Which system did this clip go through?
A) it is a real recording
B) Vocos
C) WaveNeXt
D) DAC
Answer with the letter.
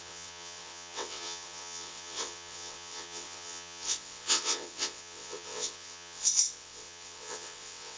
C